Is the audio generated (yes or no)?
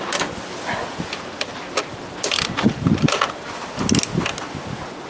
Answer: no